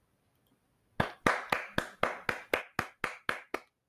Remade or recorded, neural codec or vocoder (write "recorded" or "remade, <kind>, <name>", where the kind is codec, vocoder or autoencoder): recorded